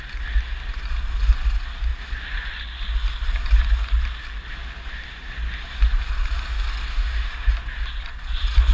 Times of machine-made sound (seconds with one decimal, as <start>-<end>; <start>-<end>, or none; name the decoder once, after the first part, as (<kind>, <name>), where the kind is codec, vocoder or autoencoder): 6.9-7.5 (autoencoder, DAC-VAE)

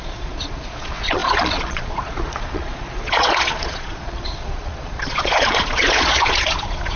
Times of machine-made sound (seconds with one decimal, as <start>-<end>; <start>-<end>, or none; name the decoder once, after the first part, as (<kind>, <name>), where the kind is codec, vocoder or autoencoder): 0.0-7.0 (vocoder, Vocos)

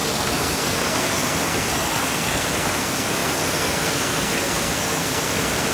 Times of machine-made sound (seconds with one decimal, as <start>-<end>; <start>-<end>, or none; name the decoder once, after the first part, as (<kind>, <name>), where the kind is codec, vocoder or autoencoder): 0.0-5.7 (codec, SNAC)

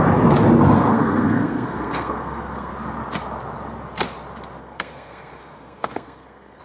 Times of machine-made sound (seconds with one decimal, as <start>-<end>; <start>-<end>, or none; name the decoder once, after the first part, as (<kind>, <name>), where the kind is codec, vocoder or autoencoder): 0.9-2.7 (codec, SNAC); 4.6-6.6

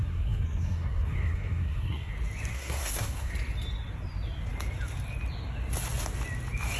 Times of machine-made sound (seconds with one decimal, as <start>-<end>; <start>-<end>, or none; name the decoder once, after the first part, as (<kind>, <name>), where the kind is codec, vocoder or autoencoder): 0.0-2.1 (codec, SNAC); 2.5-3.3

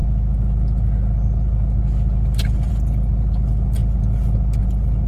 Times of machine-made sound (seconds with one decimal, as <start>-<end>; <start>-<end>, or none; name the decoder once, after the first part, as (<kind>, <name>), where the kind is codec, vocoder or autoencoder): none